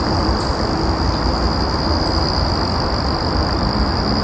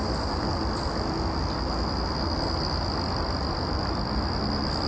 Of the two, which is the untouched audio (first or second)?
second